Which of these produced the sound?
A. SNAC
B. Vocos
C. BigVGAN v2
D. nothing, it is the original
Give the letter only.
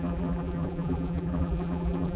C